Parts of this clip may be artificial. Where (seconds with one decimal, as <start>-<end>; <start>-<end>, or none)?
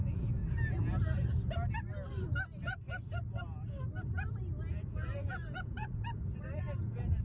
0.0-0.4; 4.7-7.2